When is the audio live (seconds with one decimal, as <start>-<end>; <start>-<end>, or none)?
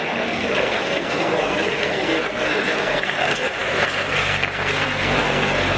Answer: none